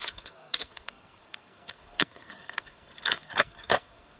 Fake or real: fake